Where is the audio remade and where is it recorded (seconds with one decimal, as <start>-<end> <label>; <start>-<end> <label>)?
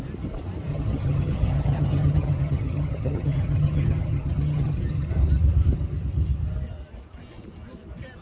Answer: 0.0-0.7 recorded; 0.7-5.1 remade; 5.1-8.2 recorded